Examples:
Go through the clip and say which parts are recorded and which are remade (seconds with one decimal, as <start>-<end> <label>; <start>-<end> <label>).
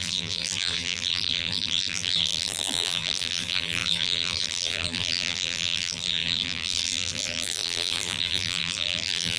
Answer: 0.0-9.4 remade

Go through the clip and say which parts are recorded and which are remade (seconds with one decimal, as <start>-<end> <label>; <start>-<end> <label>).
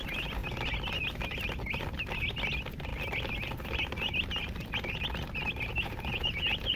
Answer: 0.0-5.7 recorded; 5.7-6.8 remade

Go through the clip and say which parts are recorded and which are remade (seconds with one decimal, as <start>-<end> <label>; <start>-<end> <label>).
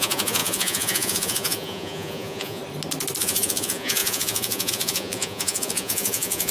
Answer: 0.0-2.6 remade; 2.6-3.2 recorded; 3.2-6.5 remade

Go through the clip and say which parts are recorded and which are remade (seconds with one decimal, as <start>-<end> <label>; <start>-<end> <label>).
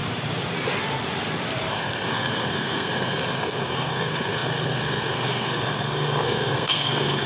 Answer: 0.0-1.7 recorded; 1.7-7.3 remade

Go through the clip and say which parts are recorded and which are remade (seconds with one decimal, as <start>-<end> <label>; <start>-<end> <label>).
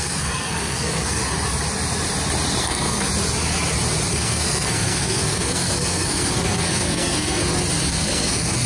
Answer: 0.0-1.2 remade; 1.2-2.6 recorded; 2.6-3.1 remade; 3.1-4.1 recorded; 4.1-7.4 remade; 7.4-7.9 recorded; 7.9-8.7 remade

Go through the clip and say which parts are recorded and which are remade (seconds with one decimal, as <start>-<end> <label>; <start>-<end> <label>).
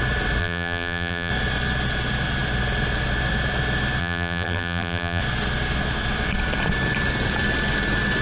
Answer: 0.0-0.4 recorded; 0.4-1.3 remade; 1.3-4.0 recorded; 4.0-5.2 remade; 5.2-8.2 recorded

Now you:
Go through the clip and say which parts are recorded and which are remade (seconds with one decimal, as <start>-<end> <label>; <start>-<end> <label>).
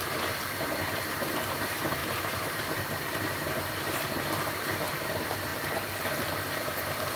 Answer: 0.0-5.5 remade; 5.5-6.4 recorded; 6.4-7.2 remade